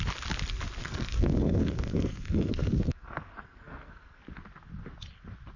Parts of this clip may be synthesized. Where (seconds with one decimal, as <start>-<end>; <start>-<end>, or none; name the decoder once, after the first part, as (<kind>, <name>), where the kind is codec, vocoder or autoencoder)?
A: 0.8-4.2 (codec, SNAC)